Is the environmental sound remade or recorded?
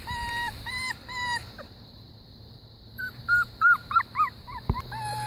remade